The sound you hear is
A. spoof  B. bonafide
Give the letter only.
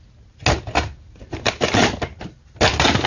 B